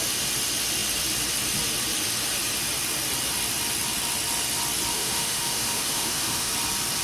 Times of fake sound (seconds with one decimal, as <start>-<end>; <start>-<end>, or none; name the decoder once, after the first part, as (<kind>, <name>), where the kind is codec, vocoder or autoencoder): 4.9-6.5 (autoencoder, DAC-VAE)